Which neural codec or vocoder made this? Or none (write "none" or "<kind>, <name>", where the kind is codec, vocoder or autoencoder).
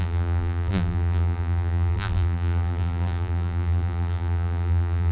vocoder, BigVGAN v2